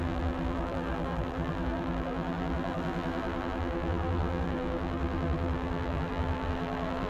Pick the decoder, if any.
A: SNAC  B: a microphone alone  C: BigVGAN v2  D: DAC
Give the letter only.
C